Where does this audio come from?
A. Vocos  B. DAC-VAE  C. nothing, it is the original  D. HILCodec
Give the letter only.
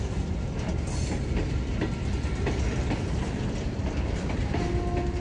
C